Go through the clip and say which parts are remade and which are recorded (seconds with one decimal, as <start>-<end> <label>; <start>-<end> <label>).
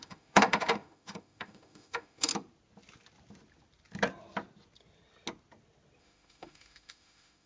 0.0-2.3 remade; 2.3-6.0 recorded; 6.0-7.5 remade